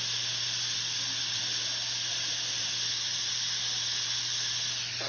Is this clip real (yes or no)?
yes